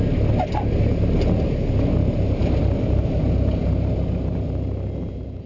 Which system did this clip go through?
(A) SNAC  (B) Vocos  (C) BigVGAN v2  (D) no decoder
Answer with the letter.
D